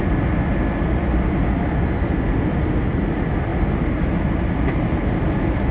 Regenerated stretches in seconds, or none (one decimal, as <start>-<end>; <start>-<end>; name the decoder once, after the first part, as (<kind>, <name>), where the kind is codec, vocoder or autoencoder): none